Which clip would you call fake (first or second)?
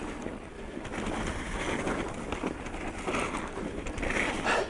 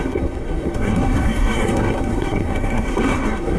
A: second